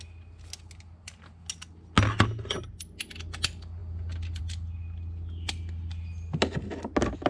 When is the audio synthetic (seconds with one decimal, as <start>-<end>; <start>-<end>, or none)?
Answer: none